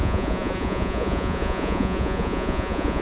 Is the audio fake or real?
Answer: fake